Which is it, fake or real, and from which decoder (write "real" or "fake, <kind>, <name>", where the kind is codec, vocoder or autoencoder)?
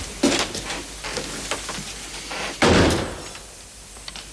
real